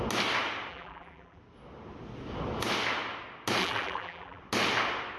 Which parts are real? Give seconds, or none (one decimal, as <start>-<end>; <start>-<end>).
0.0-0.7; 1.4-3.6; 4.4-5.2